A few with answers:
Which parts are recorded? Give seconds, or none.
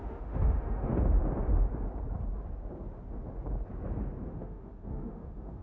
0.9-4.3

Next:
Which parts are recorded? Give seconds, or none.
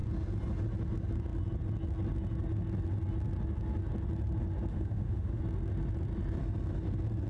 0.0-4.7; 5.4-7.3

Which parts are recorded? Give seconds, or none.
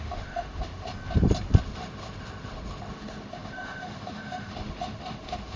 0.9-1.6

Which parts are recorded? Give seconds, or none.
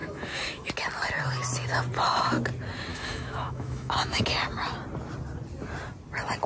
0.7-2.9; 4.2-6.5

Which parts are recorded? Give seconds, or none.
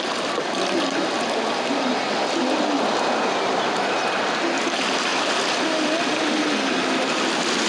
0.0-7.7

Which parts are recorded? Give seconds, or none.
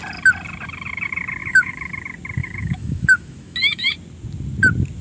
0.0-1.4; 2.0-2.4; 3.9-5.0